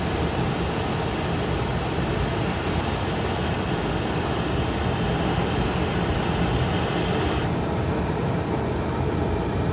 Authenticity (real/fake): real